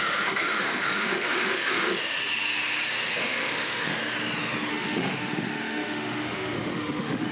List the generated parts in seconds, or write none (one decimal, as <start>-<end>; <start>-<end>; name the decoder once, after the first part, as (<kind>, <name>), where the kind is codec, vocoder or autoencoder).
0.0-2.2 (autoencoder, DAC-VAE); 3.2-3.9; 4.7-7.3

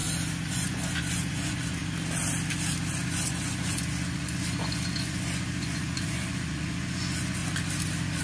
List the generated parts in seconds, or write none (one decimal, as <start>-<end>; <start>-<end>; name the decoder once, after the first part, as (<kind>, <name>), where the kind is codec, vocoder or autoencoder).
0.5-1.8 (vocoder, Vocos); 2.9-7.4

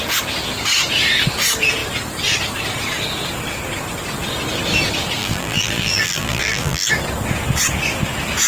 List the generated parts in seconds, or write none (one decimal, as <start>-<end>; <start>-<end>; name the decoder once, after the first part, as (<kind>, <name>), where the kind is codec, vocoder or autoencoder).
5.2-6.9 (vocoder, BigVGAN v2)